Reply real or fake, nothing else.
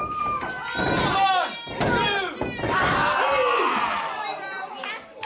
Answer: real